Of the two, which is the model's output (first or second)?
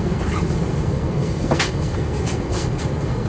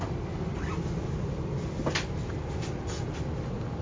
first